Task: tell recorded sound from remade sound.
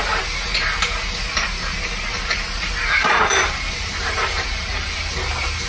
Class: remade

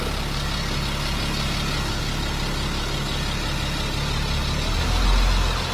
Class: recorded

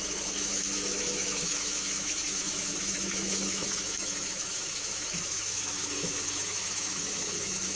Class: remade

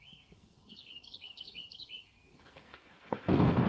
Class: remade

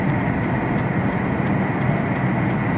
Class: recorded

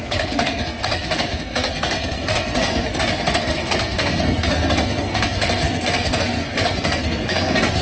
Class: remade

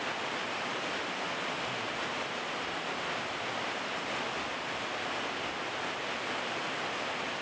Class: recorded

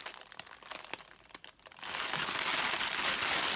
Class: recorded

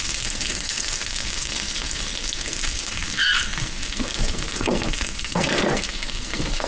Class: remade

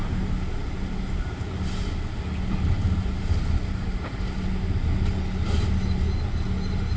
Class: recorded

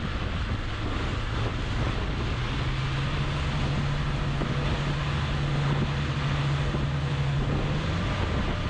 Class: recorded